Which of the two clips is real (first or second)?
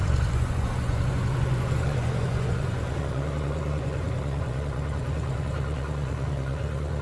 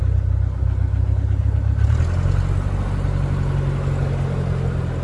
second